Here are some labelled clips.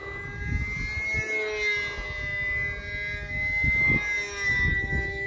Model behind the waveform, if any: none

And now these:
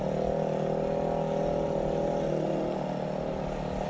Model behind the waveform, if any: none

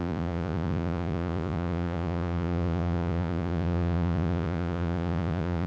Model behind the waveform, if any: vocoder, Vocos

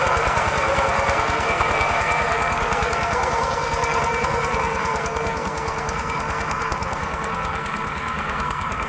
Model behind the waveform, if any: codec, SNAC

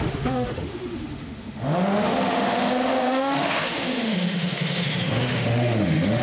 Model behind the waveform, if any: autoencoder, DAC-VAE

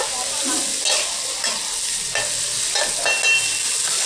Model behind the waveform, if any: none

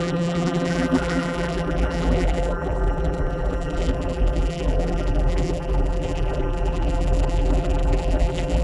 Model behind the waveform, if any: vocoder, BigVGAN v2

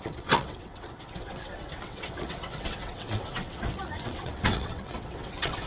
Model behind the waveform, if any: vocoder, WaveNeXt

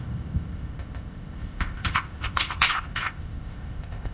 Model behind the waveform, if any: codec, ZipCodec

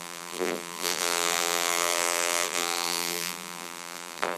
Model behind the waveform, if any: vocoder, BigVGAN v2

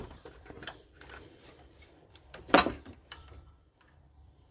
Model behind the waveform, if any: vocoder, BigVGAN v2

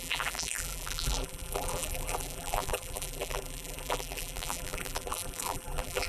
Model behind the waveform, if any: vocoder, BigVGAN v2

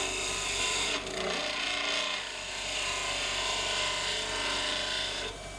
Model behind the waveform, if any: none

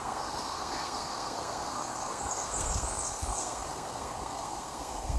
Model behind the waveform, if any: codec, SNAC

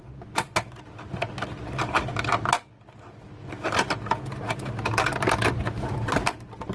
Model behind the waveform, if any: none